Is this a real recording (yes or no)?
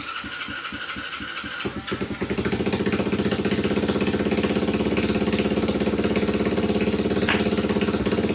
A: yes